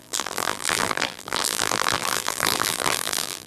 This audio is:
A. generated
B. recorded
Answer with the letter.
A